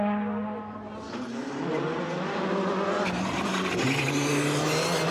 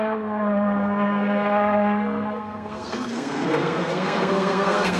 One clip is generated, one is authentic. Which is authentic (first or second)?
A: first